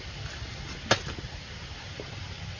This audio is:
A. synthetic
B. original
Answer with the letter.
B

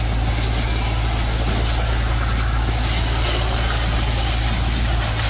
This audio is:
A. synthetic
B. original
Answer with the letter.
B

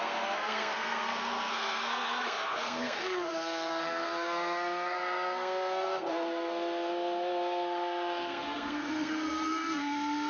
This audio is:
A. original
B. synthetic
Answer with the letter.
B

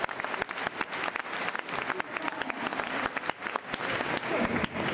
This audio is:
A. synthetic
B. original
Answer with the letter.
B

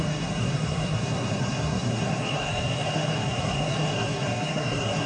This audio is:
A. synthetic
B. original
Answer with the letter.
A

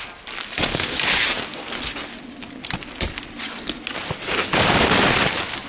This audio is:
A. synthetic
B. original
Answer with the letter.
B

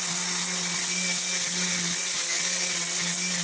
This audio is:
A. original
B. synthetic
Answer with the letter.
A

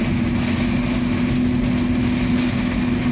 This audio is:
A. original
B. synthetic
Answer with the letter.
A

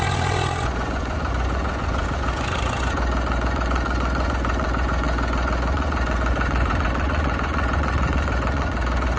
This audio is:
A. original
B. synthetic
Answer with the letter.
B